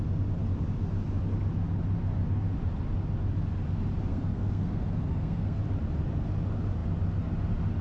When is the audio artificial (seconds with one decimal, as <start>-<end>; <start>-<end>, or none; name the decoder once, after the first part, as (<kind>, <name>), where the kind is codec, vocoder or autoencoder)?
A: 4.1-5.6 (codec, SNAC)